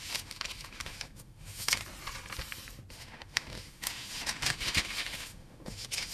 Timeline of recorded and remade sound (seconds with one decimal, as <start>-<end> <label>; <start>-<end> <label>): 0.0-1.8 remade; 1.8-2.9 recorded; 2.9-6.1 remade